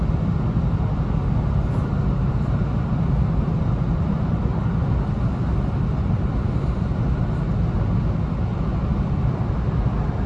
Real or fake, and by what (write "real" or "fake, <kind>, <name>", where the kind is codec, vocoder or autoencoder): real